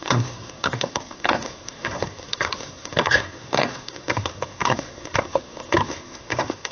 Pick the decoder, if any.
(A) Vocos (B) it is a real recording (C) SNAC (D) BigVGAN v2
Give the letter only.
C